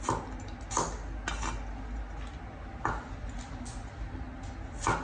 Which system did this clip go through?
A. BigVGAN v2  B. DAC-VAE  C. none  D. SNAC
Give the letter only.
C